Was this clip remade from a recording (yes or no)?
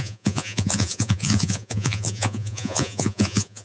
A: yes